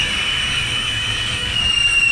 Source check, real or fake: fake